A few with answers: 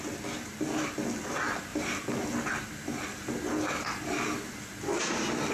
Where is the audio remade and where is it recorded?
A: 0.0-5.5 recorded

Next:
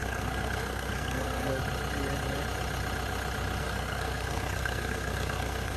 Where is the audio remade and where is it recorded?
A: 0.0-1.6 remade; 1.6-3.6 recorded; 3.6-5.8 remade